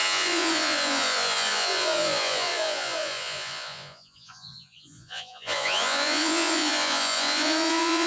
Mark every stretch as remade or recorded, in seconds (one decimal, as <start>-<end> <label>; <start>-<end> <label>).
0.0-8.1 remade